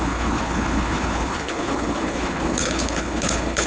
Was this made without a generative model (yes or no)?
no